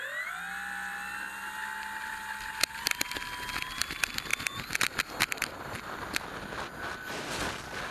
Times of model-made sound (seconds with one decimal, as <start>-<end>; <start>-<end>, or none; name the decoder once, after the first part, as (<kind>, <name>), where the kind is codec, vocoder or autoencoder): none